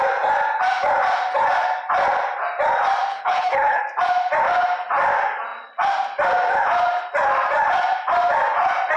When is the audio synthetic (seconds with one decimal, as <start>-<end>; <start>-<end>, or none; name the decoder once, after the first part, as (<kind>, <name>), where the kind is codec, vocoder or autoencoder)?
3.1-3.8 (codec, HILCodec)